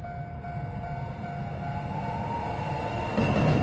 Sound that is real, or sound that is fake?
real